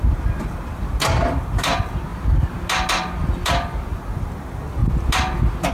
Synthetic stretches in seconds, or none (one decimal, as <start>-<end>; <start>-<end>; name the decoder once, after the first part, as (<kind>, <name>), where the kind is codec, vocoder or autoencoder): none